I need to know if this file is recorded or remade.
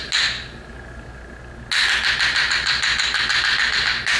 recorded